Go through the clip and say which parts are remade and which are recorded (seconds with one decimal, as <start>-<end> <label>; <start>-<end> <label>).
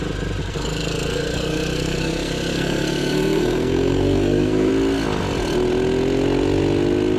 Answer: 0.0-0.4 recorded; 0.4-4.7 remade; 4.7-7.2 recorded